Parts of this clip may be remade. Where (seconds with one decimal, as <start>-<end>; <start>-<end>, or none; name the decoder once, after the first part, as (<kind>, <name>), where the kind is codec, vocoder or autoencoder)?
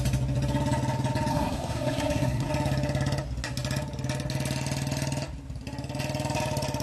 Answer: 1.3-2.5 (codec, SNAC)